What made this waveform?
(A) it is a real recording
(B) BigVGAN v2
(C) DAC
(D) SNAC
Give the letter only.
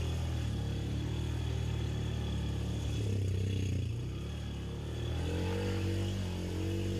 A